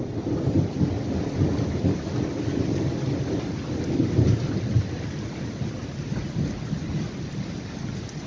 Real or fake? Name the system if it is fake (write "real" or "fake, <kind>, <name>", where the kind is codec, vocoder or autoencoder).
real